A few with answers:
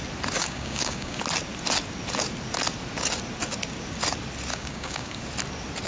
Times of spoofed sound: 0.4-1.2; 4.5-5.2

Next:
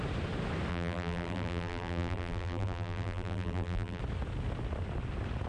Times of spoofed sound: 0.7-4.0

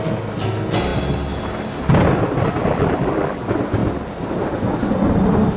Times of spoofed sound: 2.6-3.4

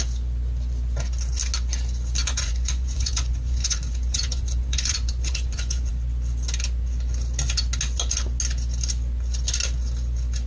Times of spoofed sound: 2.2-5.9

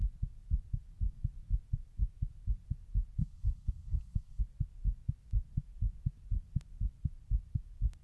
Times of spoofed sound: 3.2-4.4